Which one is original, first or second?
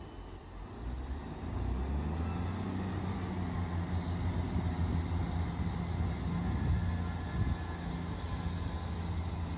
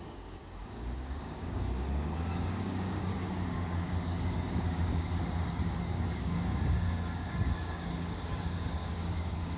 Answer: first